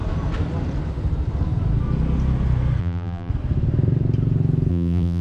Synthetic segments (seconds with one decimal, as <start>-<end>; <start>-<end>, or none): 2.8-3.3; 4.7-5.2